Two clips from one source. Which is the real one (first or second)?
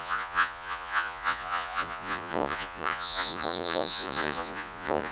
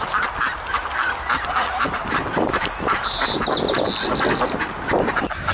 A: second